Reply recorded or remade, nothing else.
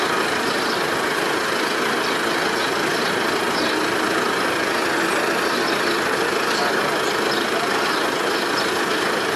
recorded